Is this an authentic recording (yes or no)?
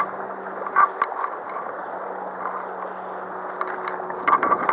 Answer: yes